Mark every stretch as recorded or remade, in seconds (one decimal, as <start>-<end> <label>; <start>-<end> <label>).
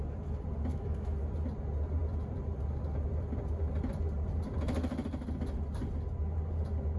0.0-0.7 recorded; 0.7-1.3 remade; 1.3-7.0 recorded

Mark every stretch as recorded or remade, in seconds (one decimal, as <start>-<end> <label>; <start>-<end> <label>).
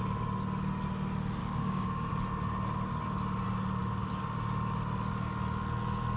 0.0-1.4 recorded; 1.4-2.1 remade; 2.1-6.2 recorded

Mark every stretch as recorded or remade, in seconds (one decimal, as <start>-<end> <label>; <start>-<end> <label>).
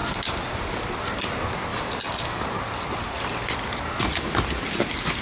0.0-5.2 recorded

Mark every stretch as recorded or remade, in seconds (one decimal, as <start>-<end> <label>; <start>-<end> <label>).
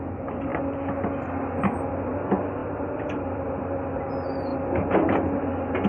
0.0-2.6 recorded; 2.6-4.1 remade; 4.1-5.9 recorded